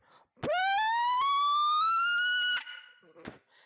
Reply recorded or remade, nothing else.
recorded